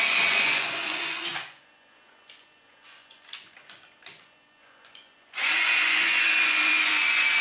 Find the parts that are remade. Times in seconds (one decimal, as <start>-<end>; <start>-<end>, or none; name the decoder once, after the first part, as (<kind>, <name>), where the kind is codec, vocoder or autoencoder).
0.0-7.4 (vocoder, Vocos)